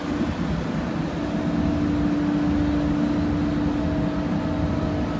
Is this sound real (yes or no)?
yes